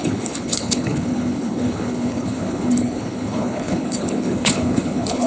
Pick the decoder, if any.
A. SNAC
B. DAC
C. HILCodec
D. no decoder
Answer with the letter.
C